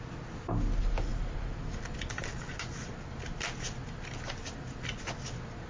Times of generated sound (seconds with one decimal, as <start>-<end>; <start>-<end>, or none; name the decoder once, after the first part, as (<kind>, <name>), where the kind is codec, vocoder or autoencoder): none